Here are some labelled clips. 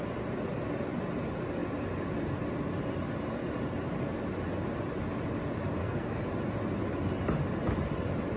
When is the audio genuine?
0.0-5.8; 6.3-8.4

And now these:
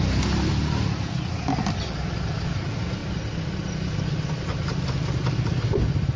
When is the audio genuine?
0.0-6.2

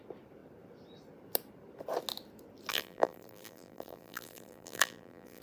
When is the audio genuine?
0.0-2.7

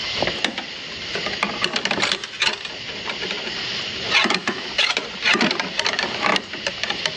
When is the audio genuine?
0.0-4.4; 4.9-7.2

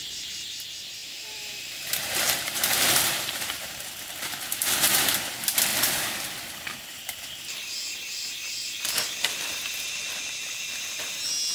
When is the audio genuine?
0.0-1.0; 4.0-5.7; 6.2-11.5